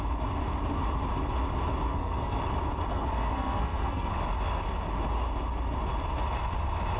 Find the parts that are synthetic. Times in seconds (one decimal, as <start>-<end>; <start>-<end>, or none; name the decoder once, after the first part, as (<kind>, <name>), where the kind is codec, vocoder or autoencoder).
1.9-2.4 (codec, SNAC); 2.9-4.1